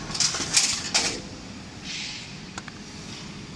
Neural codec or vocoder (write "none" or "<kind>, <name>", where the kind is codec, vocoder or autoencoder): none